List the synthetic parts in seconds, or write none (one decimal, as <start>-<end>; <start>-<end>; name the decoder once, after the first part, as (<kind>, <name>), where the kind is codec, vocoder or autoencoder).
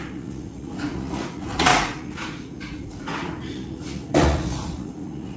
0.0-5.4 (vocoder, Vocos)